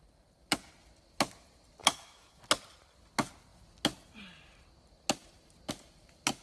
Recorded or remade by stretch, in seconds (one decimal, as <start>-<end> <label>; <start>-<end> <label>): 0.0-1.8 recorded; 1.8-2.4 remade; 2.4-6.4 recorded